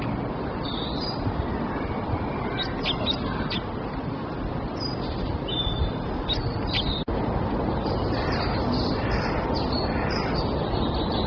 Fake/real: real